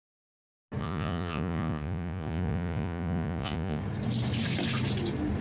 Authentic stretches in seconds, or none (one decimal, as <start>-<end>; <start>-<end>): 0.0-0.8; 3.8-5.4